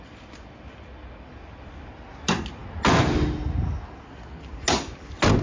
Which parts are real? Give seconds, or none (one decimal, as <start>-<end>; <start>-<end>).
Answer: 0.0-5.4